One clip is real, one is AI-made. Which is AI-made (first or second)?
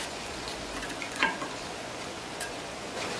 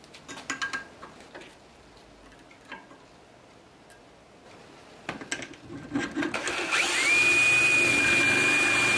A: first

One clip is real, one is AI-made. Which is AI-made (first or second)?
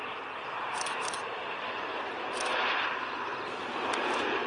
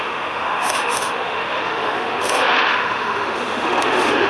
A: second